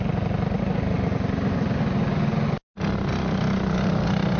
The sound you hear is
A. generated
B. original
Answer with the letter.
B